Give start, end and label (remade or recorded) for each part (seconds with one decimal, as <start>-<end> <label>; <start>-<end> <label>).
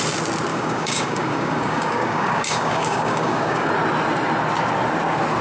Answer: 0.0-0.5 recorded; 0.5-3.7 remade; 3.7-5.4 recorded